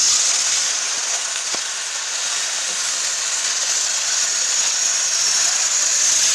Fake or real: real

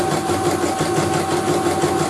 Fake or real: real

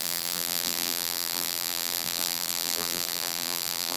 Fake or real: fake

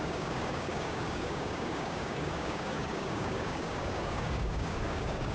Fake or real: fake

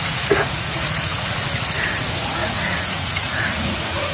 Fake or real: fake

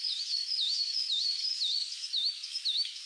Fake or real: fake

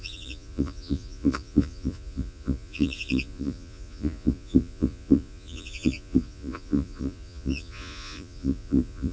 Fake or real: fake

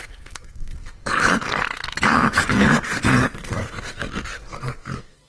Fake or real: fake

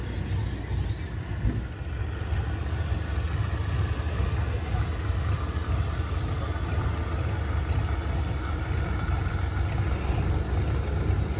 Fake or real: real